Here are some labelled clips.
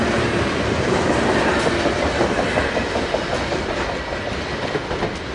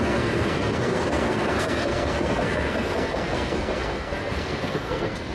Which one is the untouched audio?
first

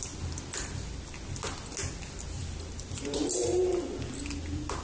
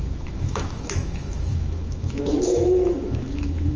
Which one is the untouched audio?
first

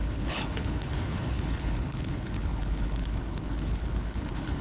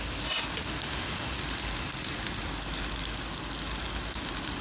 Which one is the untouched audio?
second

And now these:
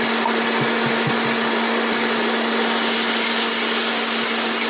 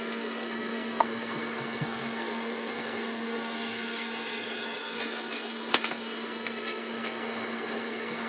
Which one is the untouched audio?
first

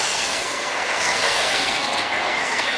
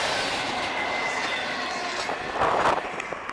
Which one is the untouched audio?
second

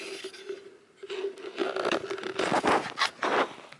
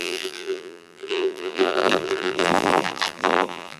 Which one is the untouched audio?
first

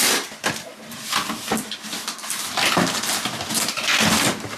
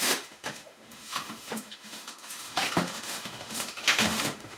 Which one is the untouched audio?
first